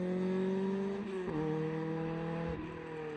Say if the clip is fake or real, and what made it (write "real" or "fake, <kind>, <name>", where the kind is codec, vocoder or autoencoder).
real